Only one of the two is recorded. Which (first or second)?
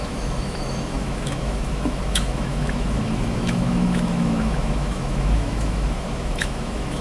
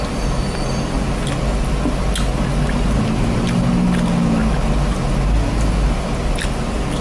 second